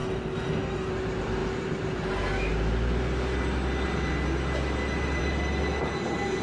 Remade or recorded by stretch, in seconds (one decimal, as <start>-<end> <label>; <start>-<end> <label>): 0.0-0.9 remade; 0.9-6.4 recorded